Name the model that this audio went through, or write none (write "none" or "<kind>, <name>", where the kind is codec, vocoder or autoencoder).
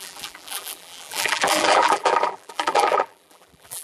vocoder, BigVGAN v2